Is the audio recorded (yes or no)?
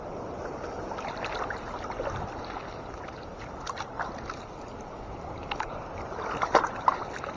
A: yes